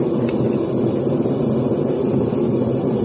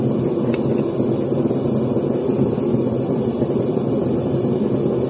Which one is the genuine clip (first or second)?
second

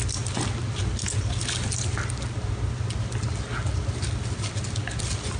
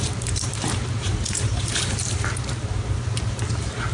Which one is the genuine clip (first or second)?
first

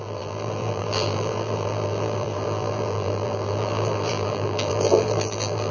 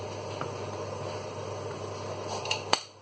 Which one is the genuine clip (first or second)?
second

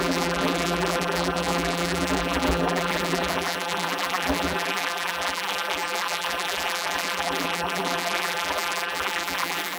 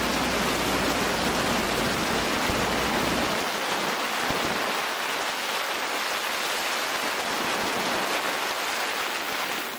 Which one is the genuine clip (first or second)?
second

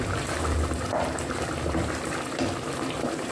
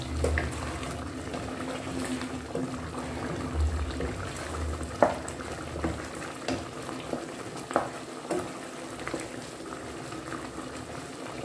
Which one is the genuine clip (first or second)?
second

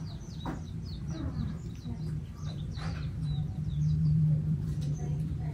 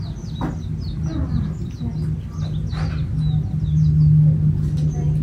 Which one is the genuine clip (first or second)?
second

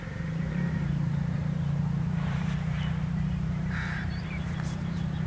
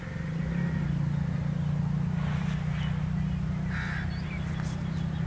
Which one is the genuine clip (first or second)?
second